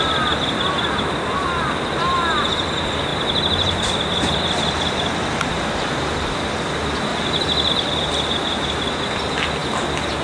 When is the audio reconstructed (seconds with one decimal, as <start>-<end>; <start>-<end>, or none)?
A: none